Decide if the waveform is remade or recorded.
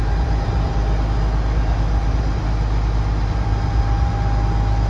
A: recorded